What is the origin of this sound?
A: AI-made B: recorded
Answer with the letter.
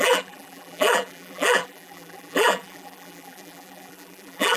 A